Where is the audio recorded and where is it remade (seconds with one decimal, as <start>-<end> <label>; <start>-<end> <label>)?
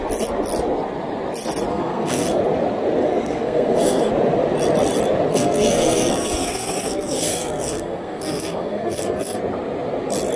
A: 0.0-1.7 recorded; 1.7-2.4 remade; 2.4-3.0 recorded; 3.0-4.1 remade; 4.1-5.3 recorded; 5.3-9.4 remade; 9.4-10.4 recorded